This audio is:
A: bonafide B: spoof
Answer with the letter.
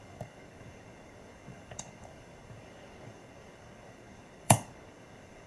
B